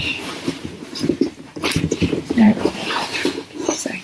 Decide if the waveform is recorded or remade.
remade